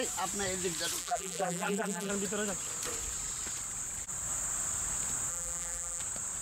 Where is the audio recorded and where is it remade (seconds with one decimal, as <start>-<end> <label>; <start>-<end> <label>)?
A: 0.0-1.0 recorded; 1.0-2.1 remade; 2.1-5.3 recorded; 5.3-6.0 remade; 6.0-6.4 recorded